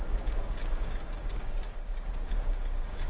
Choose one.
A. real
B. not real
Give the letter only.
B